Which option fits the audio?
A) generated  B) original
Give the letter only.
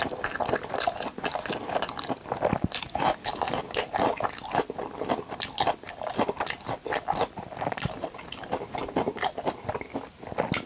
B